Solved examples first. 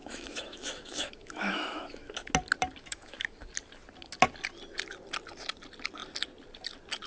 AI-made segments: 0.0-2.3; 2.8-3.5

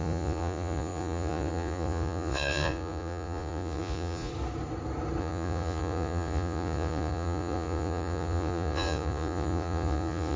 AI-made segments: 0.0-4.3; 5.2-10.4

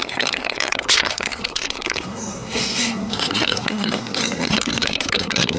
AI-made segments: 0.0-5.6

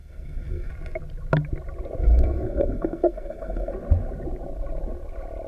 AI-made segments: 0.0-0.7; 2.0-3.7

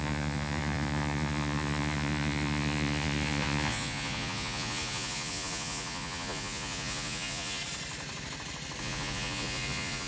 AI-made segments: 0.0-7.6; 8.8-10.1

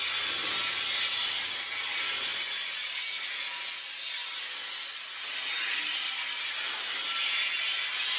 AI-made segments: none

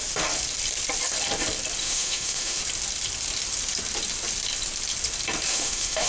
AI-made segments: 1.8-2.6; 5.5-6.1